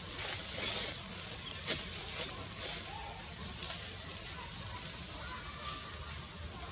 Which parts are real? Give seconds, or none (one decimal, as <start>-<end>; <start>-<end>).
0.0-6.7